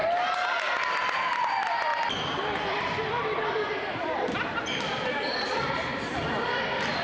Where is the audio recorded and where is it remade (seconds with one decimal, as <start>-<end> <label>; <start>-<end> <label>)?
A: 0.0-1.9 recorded; 1.9-5.9 remade; 5.9-7.0 recorded